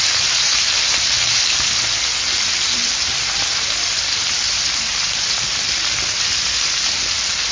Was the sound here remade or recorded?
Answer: recorded